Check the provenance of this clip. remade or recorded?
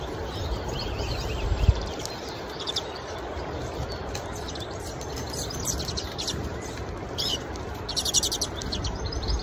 remade